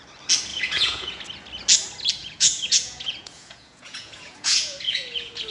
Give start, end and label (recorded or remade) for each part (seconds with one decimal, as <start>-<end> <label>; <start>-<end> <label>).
0.0-0.5 recorded; 0.5-1.2 remade; 1.2-2.2 recorded; 2.2-5.5 remade

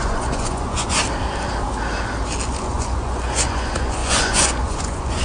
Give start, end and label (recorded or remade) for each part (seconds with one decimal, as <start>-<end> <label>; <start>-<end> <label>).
0.0-1.0 remade; 1.0-2.5 recorded; 2.5-5.2 remade

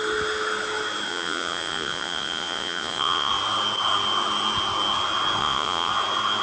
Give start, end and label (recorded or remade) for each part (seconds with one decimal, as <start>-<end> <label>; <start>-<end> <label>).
0.0-1.1 recorded; 1.1-3.3 remade; 3.3-5.4 recorded; 5.4-5.9 remade; 5.9-6.4 recorded